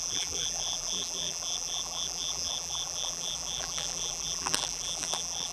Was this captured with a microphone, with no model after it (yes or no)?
no